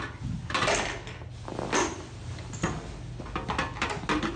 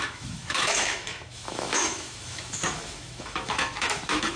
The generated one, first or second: second